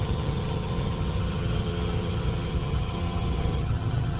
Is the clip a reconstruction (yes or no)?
yes